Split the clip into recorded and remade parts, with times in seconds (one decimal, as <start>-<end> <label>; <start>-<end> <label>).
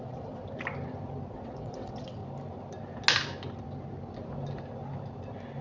0.0-0.4 remade; 0.4-1.3 recorded; 1.3-2.2 remade; 2.2-5.6 recorded